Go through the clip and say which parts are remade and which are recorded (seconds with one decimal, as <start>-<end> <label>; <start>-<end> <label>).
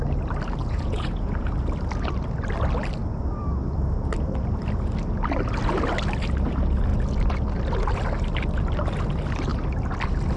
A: 0.0-0.6 recorded; 0.6-1.5 remade; 1.5-10.4 recorded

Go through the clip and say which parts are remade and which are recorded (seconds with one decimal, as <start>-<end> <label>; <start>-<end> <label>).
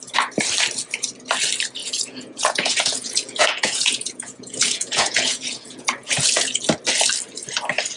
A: 0.0-1.8 recorded; 1.8-6.6 remade; 6.6-8.0 recorded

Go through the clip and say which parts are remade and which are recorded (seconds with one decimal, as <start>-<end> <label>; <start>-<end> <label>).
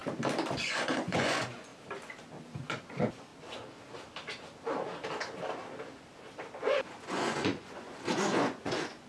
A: 0.0-0.6 recorded; 0.6-1.7 remade; 1.7-2.5 recorded; 2.5-3.3 remade; 3.3-6.9 recorded; 6.9-9.1 remade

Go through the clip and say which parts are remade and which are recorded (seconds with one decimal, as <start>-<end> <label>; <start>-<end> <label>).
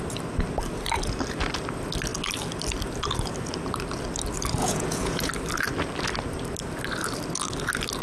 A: 0.0-4.6 recorded; 4.6-5.3 remade; 5.3-8.0 recorded